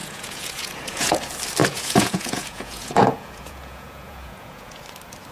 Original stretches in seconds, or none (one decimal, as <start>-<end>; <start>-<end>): 1.2-1.6; 4.8-5.3